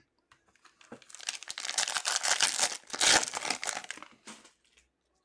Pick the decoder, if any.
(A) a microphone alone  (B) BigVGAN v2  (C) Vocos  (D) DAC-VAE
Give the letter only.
A